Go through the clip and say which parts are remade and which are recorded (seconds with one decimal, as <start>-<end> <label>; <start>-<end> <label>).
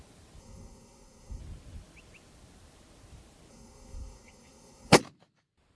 0.0-0.4 recorded; 0.4-1.4 remade; 1.4-3.5 recorded; 3.5-5.0 remade; 5.0-5.8 recorded